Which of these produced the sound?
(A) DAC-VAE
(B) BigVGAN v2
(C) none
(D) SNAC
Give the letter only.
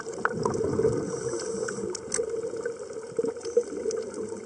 C